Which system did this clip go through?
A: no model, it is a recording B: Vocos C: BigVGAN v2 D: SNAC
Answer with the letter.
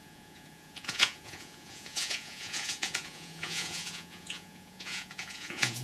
B